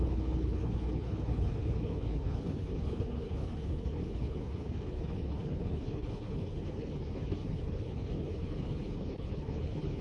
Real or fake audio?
fake